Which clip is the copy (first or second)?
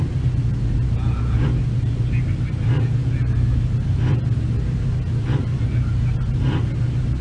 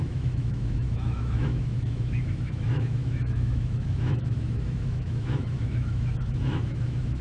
second